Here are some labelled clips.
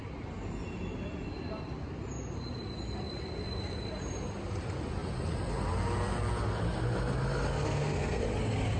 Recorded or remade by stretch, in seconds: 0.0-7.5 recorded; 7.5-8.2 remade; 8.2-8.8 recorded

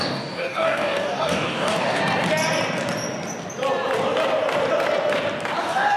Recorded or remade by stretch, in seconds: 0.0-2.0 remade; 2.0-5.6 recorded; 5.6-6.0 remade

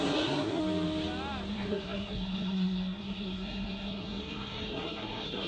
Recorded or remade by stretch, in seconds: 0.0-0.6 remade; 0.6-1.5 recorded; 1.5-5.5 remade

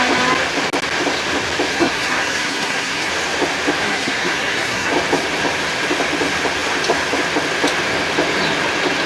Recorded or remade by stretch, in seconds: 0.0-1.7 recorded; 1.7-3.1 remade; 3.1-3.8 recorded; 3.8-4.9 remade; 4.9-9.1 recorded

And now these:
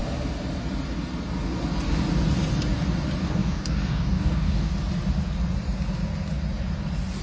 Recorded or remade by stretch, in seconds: 0.0-3.2 recorded; 3.2-4.7 remade; 4.7-7.2 recorded

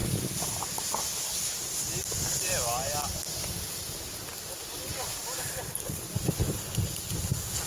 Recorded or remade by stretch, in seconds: 0.0-7.7 remade

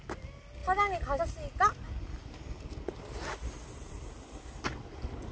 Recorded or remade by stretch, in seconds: 0.0-5.3 recorded

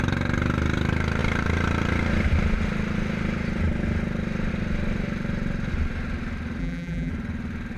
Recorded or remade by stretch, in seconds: 0.0-6.6 recorded; 6.6-7.1 remade; 7.1-7.8 recorded